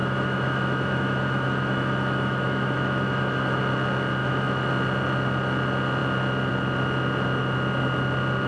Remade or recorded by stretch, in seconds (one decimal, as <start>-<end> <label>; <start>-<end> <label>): 0.0-3.6 remade; 3.6-4.2 recorded; 4.2-4.7 remade; 4.7-8.5 recorded